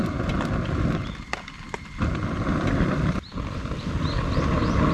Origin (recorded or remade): recorded